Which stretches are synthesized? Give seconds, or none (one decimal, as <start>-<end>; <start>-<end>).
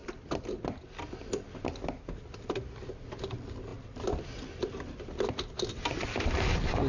none